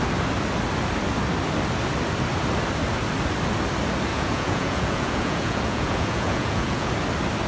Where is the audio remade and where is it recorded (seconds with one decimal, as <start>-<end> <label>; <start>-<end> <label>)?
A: 0.0-4.1 recorded; 4.1-6.9 remade; 6.9-7.5 recorded